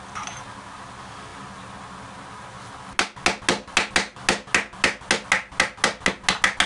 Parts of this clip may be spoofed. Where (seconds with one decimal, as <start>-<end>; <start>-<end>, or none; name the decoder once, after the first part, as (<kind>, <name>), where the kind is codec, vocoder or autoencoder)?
none